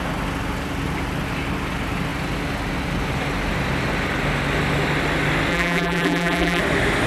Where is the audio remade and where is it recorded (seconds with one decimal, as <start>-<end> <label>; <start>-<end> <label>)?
0.0-5.5 recorded; 5.5-6.6 remade; 6.6-7.1 recorded